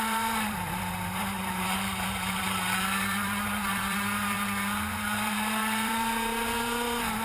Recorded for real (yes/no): no